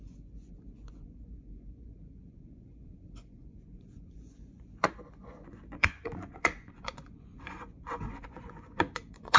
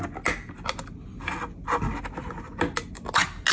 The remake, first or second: first